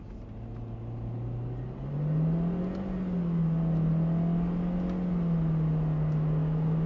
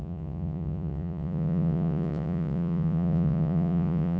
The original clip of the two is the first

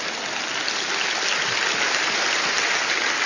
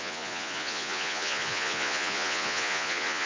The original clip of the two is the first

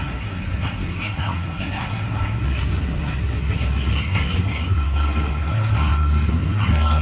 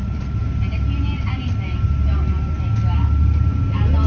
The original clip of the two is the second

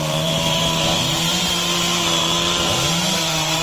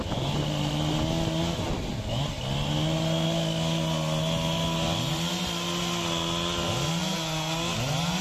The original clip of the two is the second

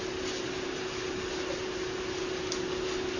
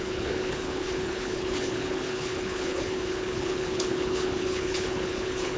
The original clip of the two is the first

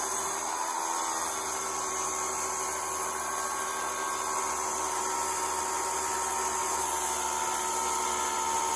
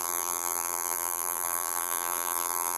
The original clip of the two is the first